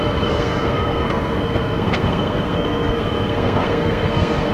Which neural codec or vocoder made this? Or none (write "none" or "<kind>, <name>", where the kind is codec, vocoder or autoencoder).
codec, SNAC